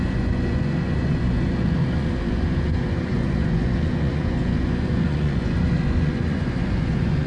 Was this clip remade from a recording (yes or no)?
yes